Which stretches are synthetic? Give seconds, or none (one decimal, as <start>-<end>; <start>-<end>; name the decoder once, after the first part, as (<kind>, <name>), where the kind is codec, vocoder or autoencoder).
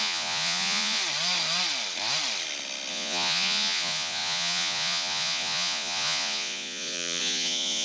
0.0-1.0 (vocoder, Vocos); 2.9-7.8